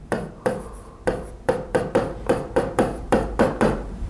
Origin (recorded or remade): remade